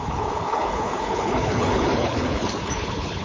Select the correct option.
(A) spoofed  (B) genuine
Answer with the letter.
A